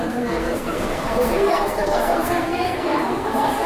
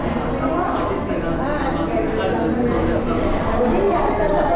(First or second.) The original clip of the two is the second